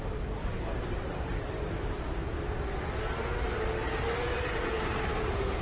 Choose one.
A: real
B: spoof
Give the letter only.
A